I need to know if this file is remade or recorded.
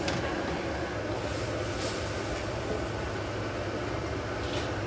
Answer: recorded